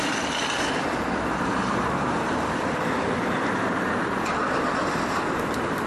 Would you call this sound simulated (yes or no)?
yes